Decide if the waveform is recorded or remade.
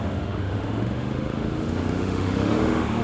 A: remade